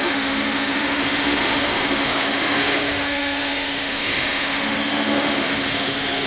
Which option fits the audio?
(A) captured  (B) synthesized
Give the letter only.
B